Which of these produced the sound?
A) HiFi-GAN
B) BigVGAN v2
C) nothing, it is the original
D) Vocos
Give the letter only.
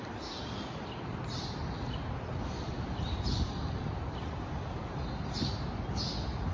C